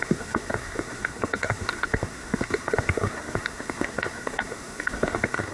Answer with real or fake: fake